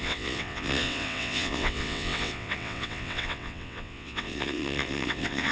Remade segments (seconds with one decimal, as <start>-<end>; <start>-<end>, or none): 0.0-5.5